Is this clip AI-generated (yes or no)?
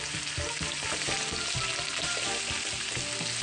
no